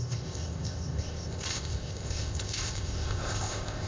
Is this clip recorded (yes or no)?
no